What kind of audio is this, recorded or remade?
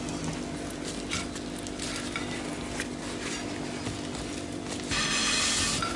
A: recorded